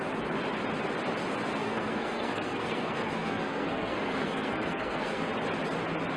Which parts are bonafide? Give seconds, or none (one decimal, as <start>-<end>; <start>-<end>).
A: 0.0-1.6; 5.3-6.2